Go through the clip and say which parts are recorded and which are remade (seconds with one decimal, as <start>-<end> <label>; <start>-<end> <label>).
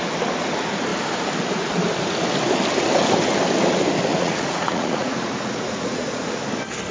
0.0-4.1 recorded; 4.1-6.3 remade; 6.3-6.9 recorded